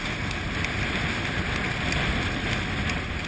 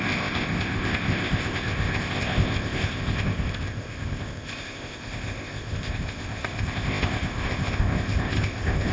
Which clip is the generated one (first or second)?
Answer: second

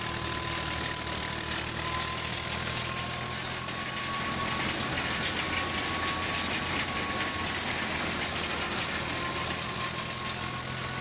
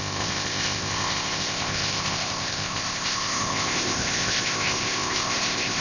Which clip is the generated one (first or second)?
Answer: second